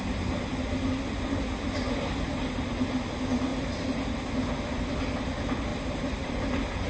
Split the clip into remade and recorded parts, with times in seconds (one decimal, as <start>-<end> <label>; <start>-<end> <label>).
0.0-5.7 recorded; 5.7-6.3 remade; 6.3-6.9 recorded